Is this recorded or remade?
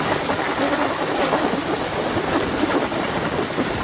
recorded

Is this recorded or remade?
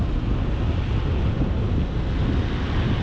recorded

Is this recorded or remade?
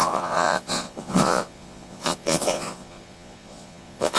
remade